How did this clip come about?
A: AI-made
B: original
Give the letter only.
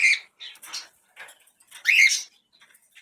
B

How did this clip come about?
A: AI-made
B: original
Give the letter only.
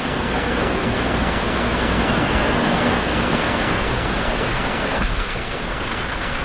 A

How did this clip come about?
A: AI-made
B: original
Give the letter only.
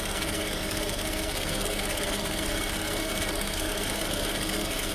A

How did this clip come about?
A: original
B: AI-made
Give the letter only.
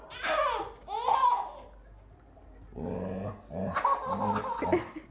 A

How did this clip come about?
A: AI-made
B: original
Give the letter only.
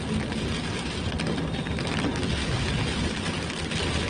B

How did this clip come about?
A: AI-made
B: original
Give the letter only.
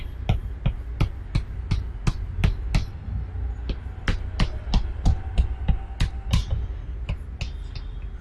B